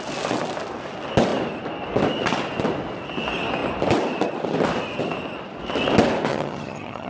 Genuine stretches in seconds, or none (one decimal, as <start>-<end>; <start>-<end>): 0.0-6.3